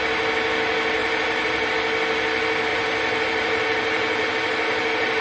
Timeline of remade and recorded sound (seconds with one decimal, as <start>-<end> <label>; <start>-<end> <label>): 0.0-1.0 recorded; 1.0-1.7 remade; 1.7-2.7 recorded; 2.7-5.2 remade